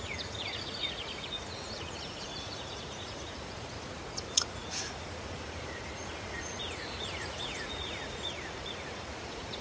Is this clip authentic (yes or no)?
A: no